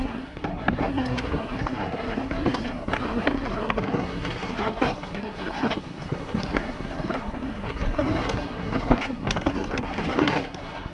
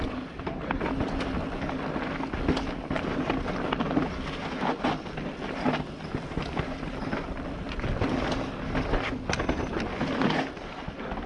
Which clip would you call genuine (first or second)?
second